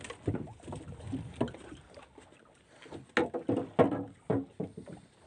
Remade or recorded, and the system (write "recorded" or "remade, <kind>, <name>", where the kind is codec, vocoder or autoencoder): recorded